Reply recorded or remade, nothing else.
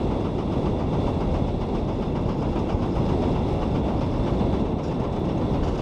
recorded